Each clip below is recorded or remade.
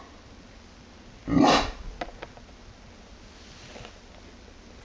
recorded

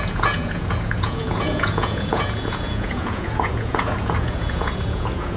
remade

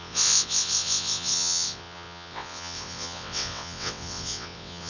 remade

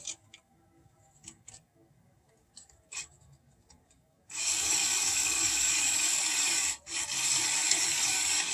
remade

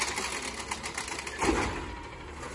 recorded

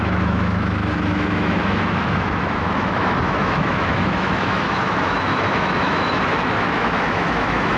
remade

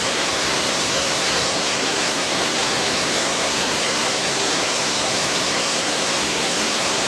remade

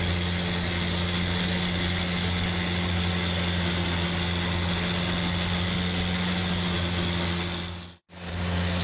recorded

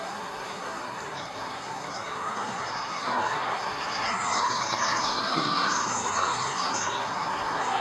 remade